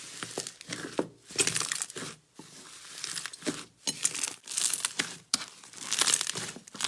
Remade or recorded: recorded